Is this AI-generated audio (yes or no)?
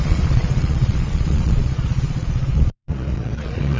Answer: yes